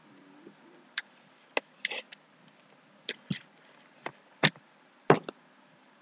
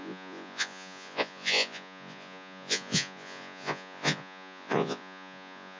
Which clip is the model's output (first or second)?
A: second